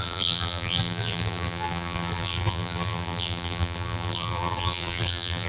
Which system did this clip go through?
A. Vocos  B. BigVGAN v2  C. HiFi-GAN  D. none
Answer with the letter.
B